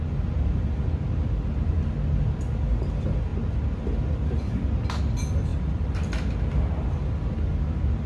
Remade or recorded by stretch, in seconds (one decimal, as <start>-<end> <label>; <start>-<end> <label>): 0.0-8.1 recorded